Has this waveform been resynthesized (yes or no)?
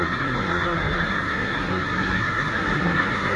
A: yes